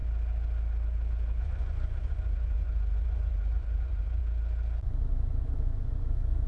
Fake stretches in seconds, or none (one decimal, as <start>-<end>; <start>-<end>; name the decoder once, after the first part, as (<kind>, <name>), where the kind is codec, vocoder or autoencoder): 1.4-4.2 (vocoder, Vocos); 4.8-6.5